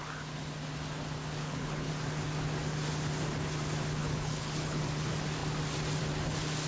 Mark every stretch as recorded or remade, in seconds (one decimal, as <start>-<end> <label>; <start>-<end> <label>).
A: 0.0-1.4 recorded; 1.4-1.9 remade; 1.9-4.0 recorded; 4.0-4.8 remade; 4.8-6.7 recorded